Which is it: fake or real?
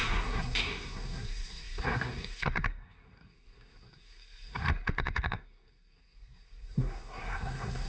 fake